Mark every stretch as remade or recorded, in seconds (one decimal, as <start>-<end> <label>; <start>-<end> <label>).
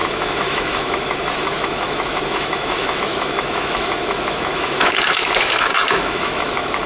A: 0.0-6.9 remade